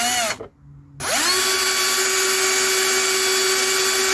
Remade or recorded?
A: recorded